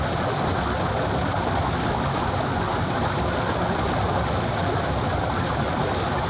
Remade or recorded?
recorded